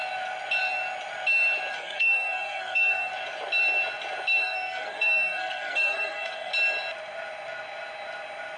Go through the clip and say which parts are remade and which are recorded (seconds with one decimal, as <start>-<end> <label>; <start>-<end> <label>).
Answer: 0.0-1.7 recorded; 1.7-3.1 remade; 3.1-4.4 recorded; 4.4-6.5 remade; 6.5-8.6 recorded